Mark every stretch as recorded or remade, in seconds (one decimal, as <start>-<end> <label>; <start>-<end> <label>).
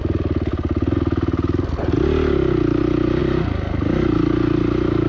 0.0-5.1 recorded